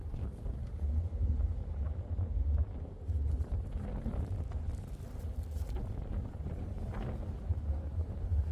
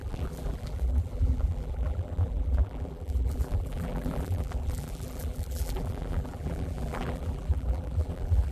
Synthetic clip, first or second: second